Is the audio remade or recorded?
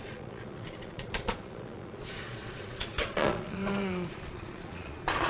remade